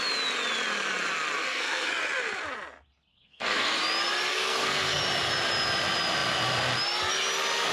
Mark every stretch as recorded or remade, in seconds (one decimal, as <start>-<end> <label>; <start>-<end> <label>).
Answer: 0.0-1.4 recorded; 1.4-1.9 remade; 1.9-3.1 recorded; 3.1-3.8 remade; 3.8-4.3 recorded; 4.3-5.0 remade; 5.0-7.7 recorded